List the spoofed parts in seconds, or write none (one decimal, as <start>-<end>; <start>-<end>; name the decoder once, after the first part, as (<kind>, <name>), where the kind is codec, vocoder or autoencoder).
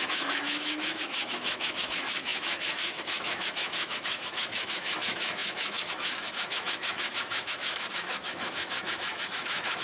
0.0-9.8 (autoencoder, DAC-VAE)